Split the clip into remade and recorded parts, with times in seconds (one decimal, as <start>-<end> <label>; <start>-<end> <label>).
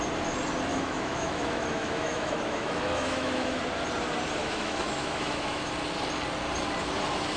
0.0-0.7 recorded; 0.7-3.6 remade; 3.6-4.4 recorded; 4.4-5.7 remade; 5.7-7.4 recorded